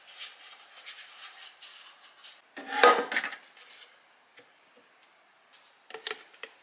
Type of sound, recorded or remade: recorded